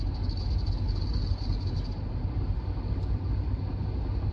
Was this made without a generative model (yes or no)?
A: yes